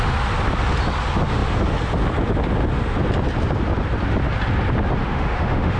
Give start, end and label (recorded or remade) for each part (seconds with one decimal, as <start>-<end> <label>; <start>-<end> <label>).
0.0-5.0 recorded; 5.0-5.8 remade